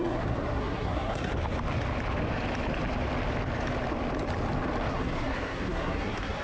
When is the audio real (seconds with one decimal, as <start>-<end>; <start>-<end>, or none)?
1.3-4.9